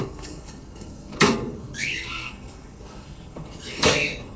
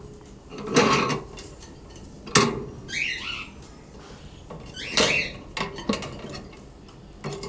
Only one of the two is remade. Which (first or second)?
first